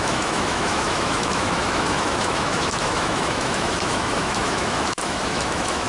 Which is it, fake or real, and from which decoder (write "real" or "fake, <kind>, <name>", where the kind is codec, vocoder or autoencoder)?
fake, autoencoder, DAC-VAE